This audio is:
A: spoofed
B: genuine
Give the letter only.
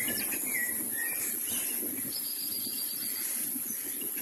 B